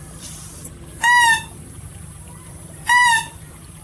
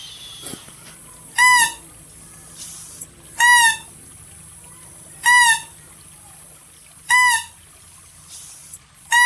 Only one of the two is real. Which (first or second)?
second